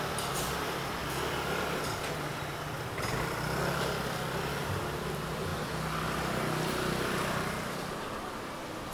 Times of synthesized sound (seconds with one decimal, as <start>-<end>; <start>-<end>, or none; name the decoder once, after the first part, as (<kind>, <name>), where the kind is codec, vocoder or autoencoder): none

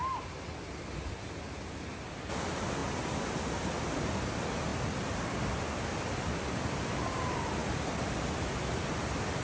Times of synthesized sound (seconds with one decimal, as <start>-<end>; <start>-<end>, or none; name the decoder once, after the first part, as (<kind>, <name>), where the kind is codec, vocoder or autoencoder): none